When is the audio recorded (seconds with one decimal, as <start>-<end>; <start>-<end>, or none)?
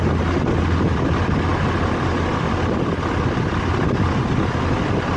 0.0-5.2